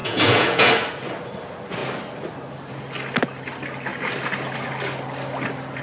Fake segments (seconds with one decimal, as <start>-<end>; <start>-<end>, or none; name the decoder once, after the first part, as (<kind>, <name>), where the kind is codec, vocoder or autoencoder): 0.0-0.7 (vocoder, Vocos)